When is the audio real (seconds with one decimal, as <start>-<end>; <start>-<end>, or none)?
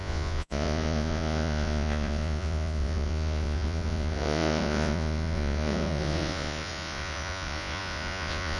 none